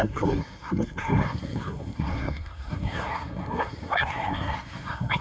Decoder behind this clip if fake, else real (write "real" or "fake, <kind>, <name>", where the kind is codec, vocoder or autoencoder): fake, codec, SNAC